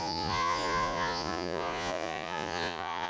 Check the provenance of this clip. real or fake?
fake